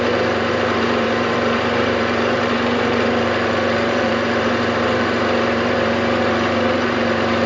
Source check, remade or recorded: remade